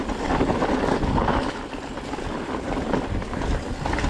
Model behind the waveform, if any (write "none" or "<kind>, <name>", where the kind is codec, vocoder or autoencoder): none